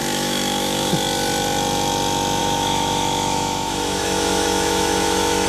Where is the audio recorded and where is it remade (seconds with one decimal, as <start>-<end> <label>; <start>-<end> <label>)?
0.0-0.9 remade; 0.9-2.4 recorded; 2.4-5.5 remade